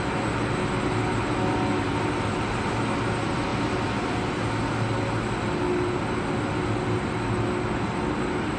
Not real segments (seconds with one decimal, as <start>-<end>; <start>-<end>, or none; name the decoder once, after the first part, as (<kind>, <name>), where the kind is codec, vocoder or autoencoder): none